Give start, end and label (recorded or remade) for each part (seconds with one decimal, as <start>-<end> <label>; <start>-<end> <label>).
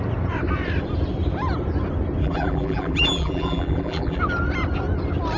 0.0-2.2 recorded; 2.2-4.2 remade; 4.2-5.4 recorded